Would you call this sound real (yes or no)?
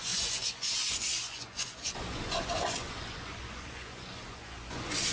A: no